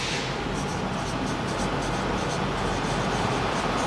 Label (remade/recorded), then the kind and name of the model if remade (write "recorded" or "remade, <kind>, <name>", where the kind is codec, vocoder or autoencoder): recorded